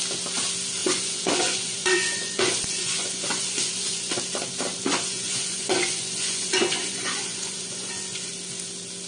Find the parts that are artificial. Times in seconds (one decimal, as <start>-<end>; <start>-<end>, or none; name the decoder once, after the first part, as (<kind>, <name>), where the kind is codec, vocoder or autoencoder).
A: 0.8-4.2 (vocoder, Vocos); 4.7-8.3

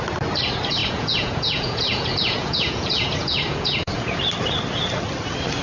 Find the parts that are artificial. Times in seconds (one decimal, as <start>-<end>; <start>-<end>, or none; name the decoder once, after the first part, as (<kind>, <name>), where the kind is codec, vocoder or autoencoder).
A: 0.8-4.2 (vocoder, Vocos)

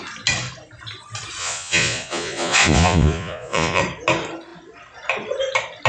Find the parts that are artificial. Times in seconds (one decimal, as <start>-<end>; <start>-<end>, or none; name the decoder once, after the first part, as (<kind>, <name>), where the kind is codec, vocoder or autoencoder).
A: 1.4-3.8 (vocoder, Vocos)

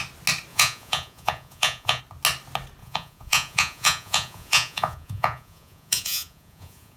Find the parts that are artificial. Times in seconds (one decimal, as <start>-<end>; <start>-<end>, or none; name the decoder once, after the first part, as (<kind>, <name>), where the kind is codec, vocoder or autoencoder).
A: 0.5-2.0 (vocoder, Vocos); 2.8-7.0

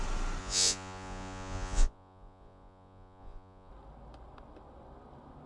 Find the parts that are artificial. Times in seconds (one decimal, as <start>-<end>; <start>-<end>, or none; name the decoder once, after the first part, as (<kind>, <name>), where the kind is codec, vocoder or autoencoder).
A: 0.4-3.7 (vocoder, Vocos)

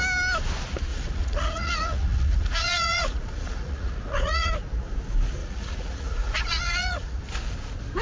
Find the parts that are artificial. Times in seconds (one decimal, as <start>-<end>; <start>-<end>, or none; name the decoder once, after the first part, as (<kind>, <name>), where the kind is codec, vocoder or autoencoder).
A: 0.9-4.5 (vocoder, Vocos); 5.4-7.2

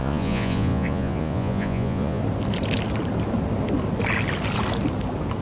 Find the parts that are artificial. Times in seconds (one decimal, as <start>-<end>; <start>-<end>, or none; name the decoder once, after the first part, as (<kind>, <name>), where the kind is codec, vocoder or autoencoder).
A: 0.0-2.2 (vocoder, Vocos)

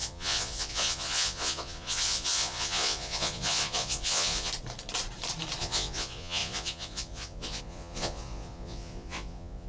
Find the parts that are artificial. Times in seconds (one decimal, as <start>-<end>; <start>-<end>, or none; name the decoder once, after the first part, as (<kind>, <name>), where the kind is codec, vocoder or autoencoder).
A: 0.0-4.5 (vocoder, Vocos); 5.6-9.7